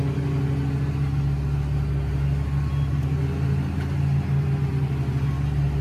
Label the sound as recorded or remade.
recorded